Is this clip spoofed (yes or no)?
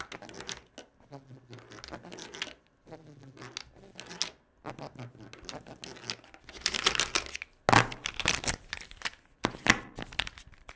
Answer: no